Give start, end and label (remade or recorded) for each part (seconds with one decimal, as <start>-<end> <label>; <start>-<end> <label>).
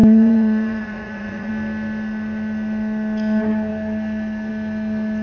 0.0-1.5 remade; 1.5-5.2 recorded